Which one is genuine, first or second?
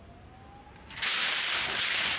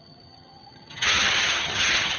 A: first